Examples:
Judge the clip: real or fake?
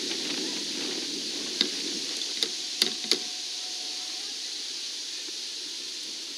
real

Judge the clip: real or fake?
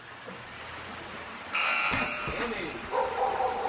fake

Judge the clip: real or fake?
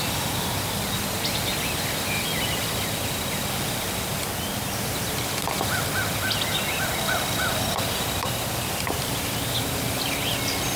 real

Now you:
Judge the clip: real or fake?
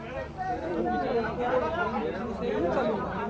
real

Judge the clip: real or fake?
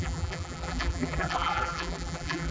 fake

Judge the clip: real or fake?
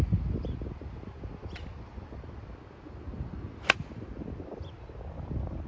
real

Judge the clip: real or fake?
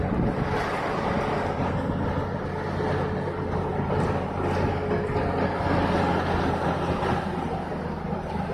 real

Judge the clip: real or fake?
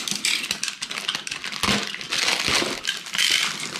real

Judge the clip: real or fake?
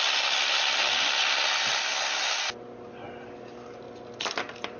real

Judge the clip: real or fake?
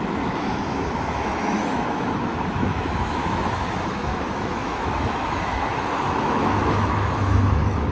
fake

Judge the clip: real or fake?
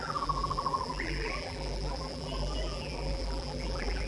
fake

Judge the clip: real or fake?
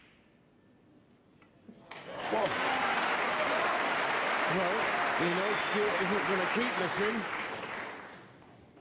real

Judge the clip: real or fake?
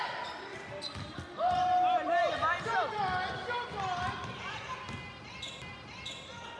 real